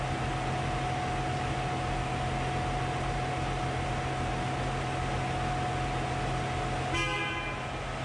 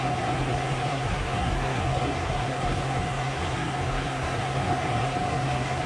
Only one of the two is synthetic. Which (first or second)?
second